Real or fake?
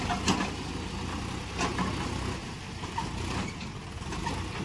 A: real